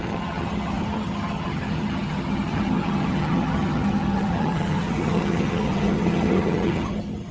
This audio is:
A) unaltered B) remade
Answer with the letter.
B